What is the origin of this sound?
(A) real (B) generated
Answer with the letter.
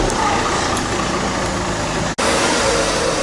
A